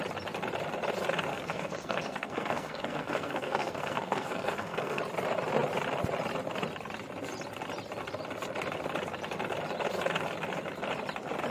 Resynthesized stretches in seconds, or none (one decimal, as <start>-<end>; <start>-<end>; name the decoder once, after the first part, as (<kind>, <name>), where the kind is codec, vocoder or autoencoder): 1.3-5.0 (codec, SNAC)